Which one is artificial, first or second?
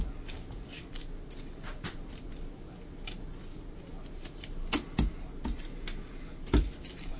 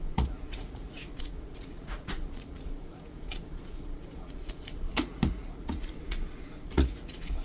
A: second